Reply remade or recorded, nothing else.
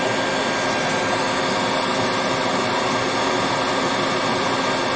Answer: recorded